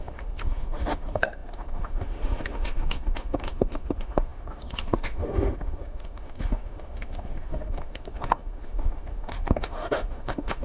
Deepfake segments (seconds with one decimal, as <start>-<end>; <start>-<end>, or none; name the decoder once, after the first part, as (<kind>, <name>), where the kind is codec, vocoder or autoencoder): 0.0-10.6 (autoencoder, DAC-VAE)